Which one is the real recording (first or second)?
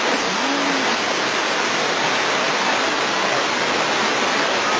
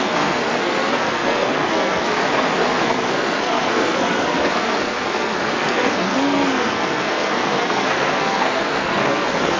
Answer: first